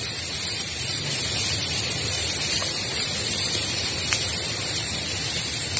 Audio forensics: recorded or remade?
remade